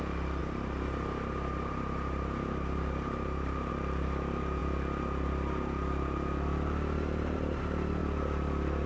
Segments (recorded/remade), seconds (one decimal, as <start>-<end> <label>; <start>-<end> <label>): 0.0-0.4 recorded; 0.4-3.7 remade; 3.7-8.9 recorded